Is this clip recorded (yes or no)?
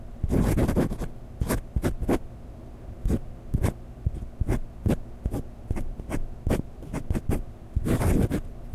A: yes